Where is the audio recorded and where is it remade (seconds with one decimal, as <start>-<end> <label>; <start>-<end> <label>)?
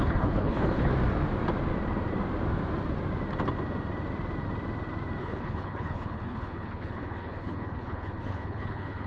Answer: 0.0-0.9 remade; 0.9-5.2 recorded; 5.2-9.1 remade